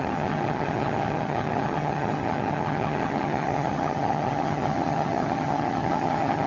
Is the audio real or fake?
fake